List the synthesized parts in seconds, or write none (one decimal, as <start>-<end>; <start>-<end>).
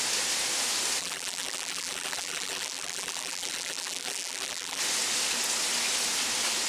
1.0-4.8